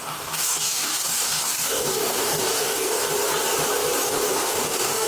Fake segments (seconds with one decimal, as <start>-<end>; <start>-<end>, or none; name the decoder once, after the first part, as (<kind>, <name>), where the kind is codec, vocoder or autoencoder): 0.0-3.1 (codec, DAC); 4.0-5.1